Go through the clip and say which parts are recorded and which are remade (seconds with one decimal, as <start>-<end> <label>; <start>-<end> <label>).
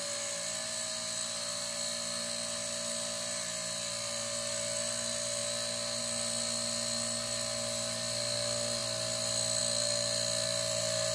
0.0-5.4 remade; 5.4-6.0 recorded; 6.0-8.8 remade; 8.8-9.6 recorded; 9.6-11.1 remade